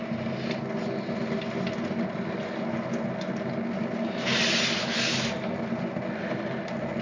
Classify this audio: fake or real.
real